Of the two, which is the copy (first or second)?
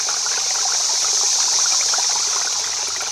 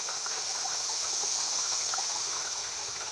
second